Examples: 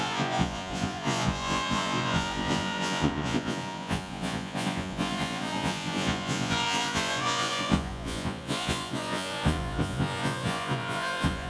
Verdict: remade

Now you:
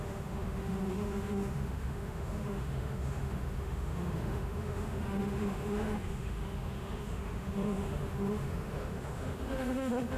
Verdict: remade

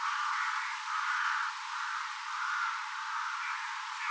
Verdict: recorded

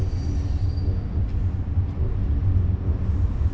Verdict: recorded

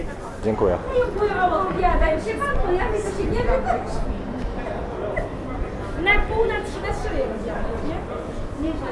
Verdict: recorded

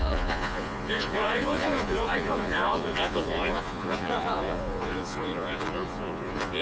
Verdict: remade